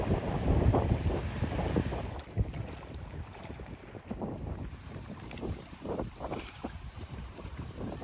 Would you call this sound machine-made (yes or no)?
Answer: yes